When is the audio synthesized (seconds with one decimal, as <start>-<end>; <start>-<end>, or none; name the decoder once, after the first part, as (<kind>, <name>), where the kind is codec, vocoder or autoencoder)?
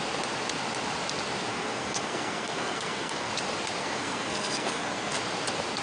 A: 1.5-3.3 (codec, SNAC); 3.8-5.1